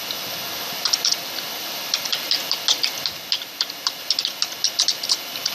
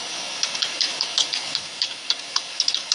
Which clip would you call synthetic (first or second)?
second